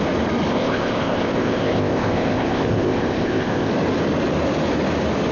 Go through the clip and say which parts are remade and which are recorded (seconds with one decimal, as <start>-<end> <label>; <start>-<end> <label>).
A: 0.0-0.5 recorded; 0.5-3.7 remade; 3.7-5.3 recorded